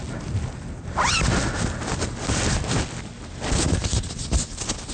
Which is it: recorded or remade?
recorded